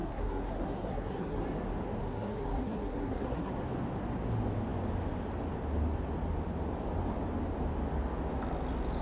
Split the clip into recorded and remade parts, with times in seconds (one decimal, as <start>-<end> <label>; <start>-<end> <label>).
0.0-1.4 remade; 1.4-2.0 recorded; 2.0-3.5 remade; 3.5-9.0 recorded